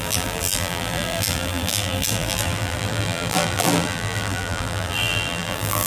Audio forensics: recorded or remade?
remade